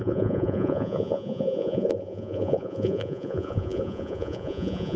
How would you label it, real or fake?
fake